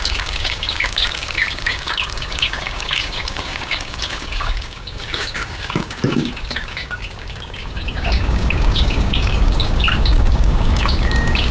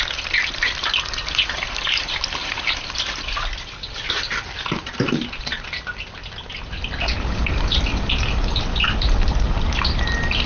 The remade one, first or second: first